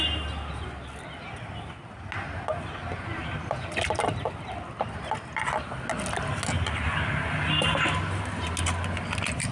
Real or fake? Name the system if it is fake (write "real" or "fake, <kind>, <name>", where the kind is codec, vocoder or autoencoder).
real